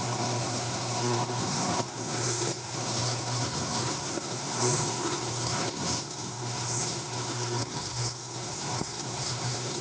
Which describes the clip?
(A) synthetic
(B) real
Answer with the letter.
A